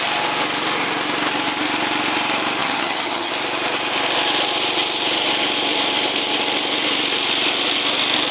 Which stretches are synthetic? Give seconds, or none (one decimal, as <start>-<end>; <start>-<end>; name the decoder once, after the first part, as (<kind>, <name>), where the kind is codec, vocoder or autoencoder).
2.6-3.3 (vocoder, HiFi-GAN)